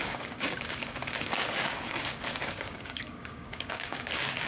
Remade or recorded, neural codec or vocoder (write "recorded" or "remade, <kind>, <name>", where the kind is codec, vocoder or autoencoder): remade, codec, DAC